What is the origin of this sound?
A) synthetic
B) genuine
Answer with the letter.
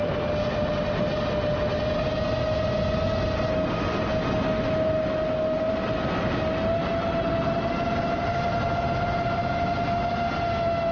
B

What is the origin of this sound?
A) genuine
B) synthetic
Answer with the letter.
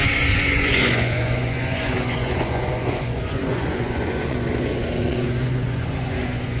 B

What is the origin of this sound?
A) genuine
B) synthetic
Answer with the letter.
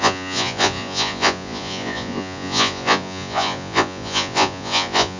B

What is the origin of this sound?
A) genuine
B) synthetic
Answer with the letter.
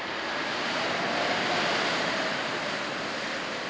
A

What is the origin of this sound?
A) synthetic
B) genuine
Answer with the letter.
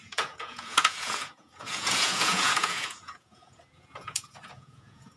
A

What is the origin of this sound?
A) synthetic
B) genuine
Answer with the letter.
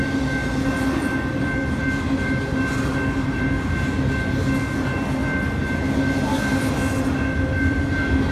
B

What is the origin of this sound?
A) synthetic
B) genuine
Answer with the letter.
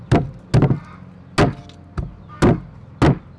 B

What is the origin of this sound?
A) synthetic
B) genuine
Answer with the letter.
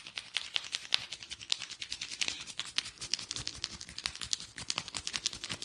B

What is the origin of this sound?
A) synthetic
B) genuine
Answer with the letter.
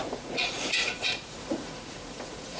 A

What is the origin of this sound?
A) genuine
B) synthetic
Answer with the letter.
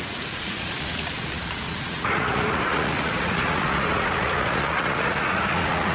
B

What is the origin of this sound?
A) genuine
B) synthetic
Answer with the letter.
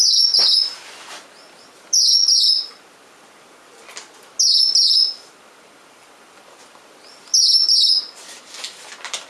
A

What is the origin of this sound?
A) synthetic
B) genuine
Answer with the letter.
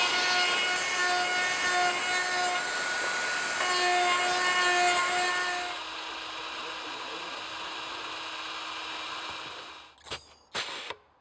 B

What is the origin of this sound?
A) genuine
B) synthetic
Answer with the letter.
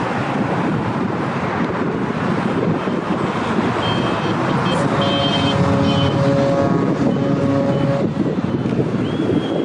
A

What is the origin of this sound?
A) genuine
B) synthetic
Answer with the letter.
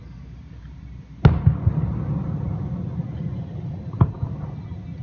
A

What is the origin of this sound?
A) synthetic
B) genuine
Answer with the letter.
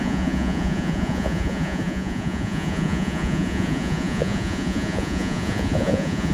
A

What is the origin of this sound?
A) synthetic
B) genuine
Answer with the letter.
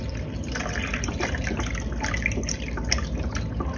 B